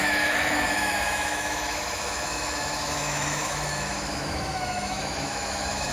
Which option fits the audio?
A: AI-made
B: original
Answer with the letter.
A